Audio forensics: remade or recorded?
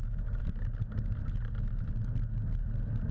recorded